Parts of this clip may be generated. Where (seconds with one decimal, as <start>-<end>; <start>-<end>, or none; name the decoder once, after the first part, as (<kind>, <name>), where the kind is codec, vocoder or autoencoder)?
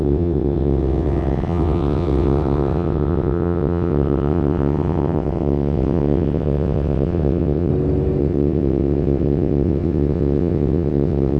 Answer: 0.0-7.7 (vocoder, WaveNeXt); 8.2-11.4